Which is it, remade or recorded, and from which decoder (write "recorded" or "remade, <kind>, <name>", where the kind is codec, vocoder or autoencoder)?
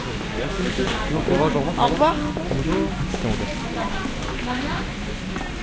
recorded